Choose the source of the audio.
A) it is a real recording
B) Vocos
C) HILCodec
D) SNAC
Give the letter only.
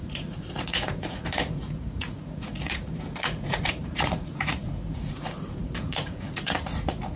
B